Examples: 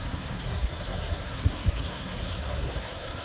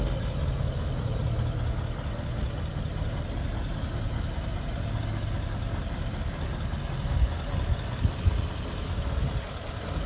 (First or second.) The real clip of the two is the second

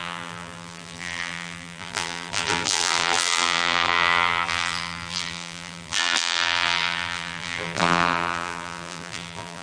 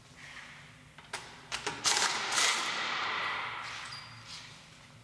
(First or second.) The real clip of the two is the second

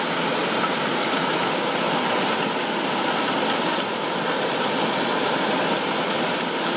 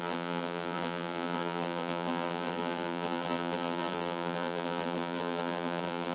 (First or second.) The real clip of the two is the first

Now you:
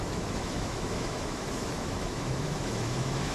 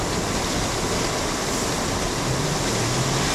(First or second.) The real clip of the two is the second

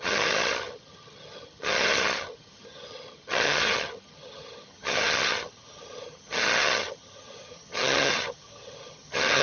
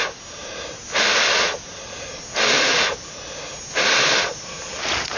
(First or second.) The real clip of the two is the second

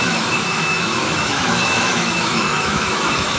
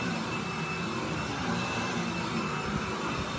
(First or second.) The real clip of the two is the second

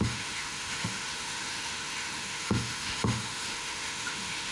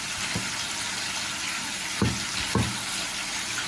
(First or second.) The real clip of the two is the second